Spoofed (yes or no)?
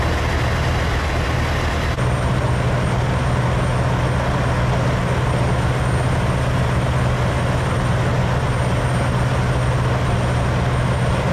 no